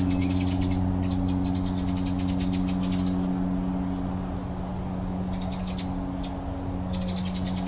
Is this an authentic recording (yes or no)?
yes